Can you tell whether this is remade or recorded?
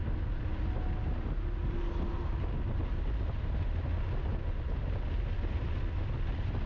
recorded